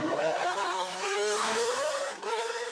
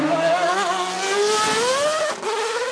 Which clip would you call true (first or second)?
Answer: second